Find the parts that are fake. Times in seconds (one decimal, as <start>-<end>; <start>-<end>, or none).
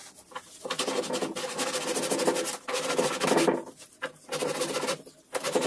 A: none